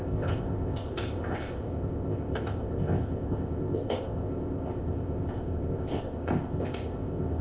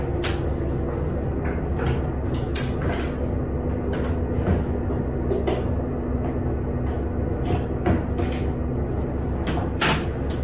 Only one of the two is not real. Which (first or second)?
first